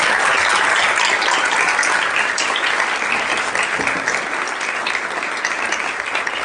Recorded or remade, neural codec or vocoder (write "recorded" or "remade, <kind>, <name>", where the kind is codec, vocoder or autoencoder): recorded